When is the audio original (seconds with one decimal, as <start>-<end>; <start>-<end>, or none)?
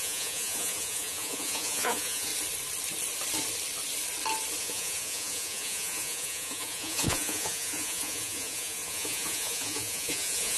2.3-4.6